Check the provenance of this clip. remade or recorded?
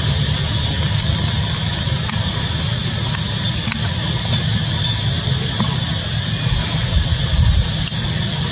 recorded